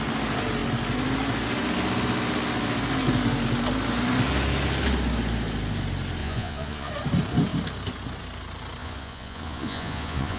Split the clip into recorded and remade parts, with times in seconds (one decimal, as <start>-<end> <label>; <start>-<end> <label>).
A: 0.0-6.2 recorded; 6.2-6.9 remade; 6.9-8.8 recorded; 8.8-10.4 remade